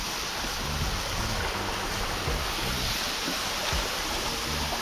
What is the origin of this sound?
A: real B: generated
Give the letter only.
A